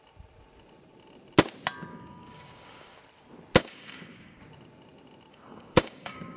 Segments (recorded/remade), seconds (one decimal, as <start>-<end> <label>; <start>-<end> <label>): 0.0-1.9 recorded; 1.9-3.0 remade; 3.0-3.6 recorded; 3.6-4.4 remade; 4.4-5.3 recorded; 5.3-6.4 remade